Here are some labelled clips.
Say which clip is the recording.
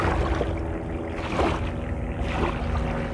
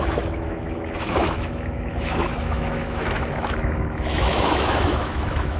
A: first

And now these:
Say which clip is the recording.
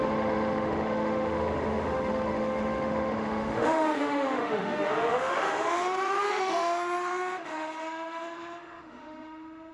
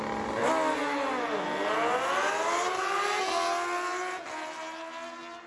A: second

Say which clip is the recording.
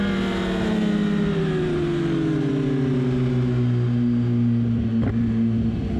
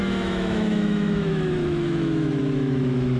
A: first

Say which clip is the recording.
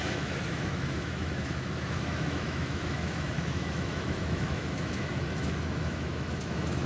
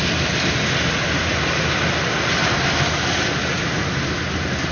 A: second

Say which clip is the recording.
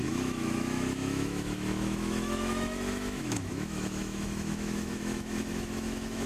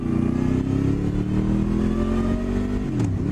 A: second